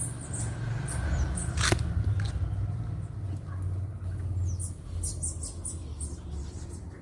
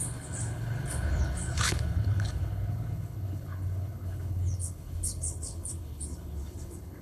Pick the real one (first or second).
first